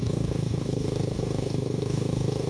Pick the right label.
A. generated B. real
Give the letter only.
A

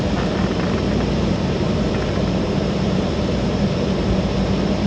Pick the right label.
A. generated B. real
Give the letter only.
A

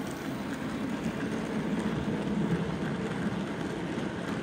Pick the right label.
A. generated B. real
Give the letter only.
B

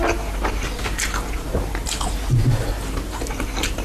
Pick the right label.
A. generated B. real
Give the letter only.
B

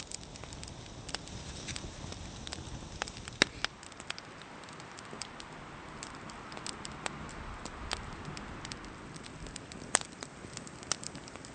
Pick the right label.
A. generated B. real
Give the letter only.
B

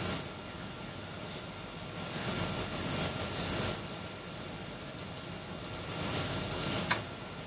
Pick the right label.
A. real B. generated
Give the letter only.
A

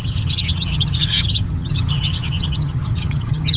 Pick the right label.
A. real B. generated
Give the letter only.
B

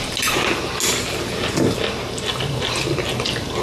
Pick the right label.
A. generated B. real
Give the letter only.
B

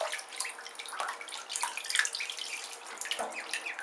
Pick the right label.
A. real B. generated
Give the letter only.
A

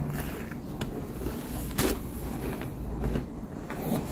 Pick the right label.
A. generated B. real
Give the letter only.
B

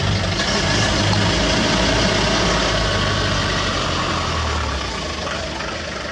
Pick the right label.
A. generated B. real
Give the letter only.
B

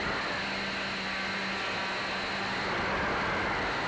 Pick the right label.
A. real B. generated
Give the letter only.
A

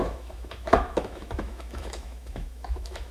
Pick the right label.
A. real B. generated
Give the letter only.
B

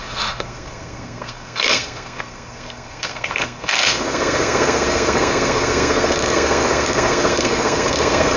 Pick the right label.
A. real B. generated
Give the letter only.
B